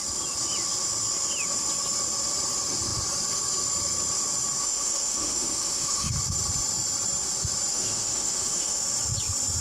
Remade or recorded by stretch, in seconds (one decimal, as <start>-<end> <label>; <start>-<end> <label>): 0.0-4.6 recorded; 4.6-6.1 remade; 6.1-7.7 recorded; 7.7-8.8 remade; 8.8-9.6 recorded